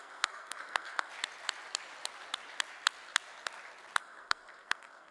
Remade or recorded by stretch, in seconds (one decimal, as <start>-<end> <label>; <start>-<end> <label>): 0.0-1.1 remade; 1.1-4.0 recorded; 4.0-5.1 remade